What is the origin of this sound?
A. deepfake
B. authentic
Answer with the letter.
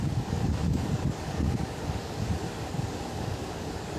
A